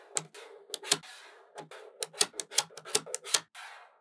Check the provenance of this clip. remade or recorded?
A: recorded